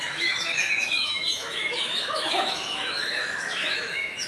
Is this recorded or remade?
remade